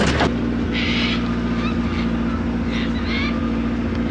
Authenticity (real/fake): real